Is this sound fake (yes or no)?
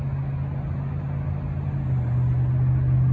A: no